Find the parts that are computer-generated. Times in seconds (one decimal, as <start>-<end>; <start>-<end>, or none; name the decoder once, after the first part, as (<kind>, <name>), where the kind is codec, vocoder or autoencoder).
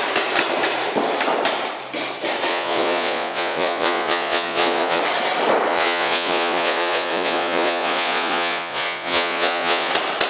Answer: 2.5-5.0 (vocoder, Vocos); 5.7-9.9